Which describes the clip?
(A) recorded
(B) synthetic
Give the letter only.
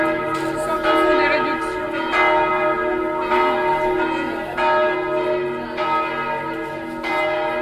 A